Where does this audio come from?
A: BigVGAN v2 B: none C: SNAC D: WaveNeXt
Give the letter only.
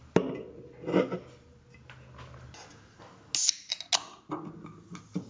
B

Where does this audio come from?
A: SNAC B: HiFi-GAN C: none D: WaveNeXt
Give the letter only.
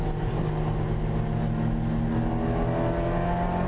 C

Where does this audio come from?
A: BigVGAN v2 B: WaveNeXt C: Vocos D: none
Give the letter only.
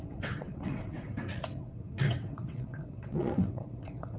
B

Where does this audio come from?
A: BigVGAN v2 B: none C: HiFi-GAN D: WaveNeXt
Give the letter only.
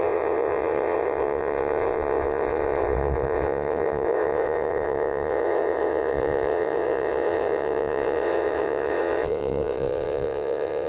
D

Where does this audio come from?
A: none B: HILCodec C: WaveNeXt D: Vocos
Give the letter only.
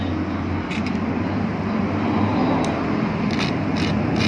A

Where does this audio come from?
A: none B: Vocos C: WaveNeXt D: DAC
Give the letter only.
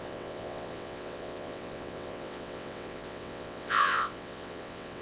C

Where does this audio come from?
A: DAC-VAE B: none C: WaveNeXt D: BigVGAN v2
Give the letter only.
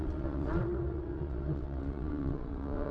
C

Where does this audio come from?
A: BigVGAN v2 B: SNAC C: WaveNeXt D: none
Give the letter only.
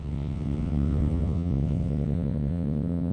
C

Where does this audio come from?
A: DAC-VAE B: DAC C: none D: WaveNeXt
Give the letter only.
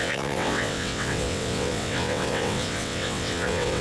D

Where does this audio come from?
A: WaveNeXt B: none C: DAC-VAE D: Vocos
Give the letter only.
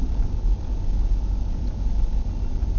B